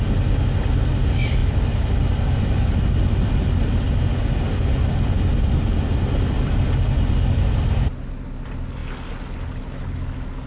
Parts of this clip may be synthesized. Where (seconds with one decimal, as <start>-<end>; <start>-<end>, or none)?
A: none